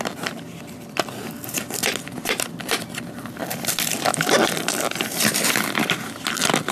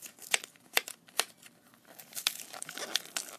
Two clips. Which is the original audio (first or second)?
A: second